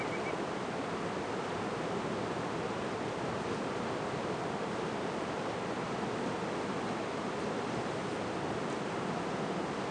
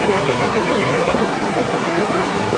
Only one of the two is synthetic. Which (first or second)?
second